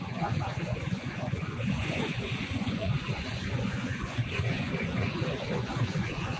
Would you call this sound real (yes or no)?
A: no